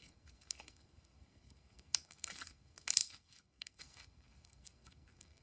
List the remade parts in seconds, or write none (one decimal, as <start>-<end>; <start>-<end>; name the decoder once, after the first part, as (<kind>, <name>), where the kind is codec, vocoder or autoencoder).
0.0-5.4 (codec, SNAC)